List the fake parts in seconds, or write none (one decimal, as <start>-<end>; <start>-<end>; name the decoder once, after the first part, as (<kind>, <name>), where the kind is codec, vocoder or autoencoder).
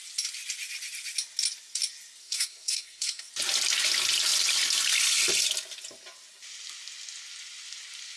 2.2-3.3 (codec, SNAC)